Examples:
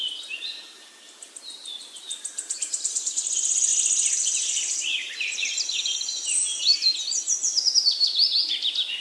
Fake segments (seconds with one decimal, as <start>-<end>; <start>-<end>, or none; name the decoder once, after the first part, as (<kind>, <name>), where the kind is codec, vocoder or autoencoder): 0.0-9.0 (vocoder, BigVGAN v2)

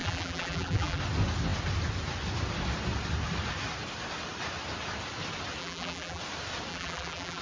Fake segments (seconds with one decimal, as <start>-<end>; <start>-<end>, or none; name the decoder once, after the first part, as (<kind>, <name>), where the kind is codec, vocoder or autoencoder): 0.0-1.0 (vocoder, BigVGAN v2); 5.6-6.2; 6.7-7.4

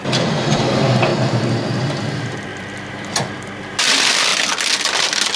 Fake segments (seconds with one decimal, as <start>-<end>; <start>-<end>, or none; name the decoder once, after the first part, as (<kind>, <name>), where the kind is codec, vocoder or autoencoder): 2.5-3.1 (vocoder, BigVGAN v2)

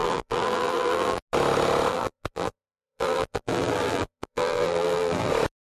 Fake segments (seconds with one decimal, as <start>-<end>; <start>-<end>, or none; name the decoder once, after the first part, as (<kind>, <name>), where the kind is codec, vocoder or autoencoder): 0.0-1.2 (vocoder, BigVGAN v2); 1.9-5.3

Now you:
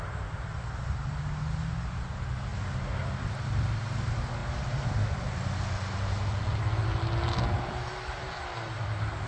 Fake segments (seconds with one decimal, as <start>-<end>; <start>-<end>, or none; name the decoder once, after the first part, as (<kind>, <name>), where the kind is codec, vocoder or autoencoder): 4.4-5.1 (vocoder, BigVGAN v2)